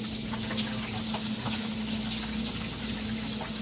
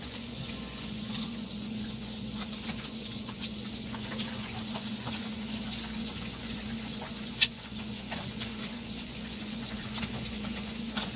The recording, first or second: first